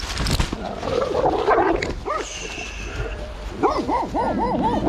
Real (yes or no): yes